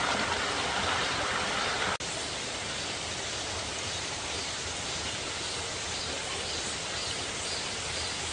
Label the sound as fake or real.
real